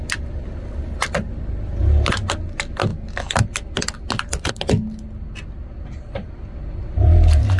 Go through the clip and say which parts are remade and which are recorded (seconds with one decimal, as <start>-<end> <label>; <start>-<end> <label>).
0.0-7.6 recorded